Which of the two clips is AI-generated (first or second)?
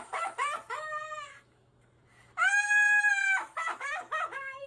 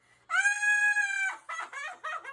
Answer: first